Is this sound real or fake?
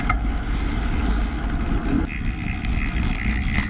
real